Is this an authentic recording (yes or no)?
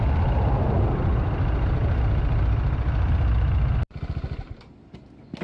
yes